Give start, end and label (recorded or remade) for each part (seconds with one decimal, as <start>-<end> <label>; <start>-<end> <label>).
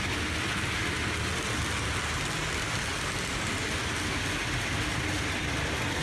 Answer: 0.0-6.0 recorded